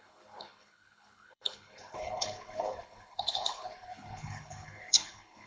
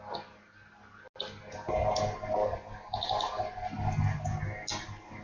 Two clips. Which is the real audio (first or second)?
second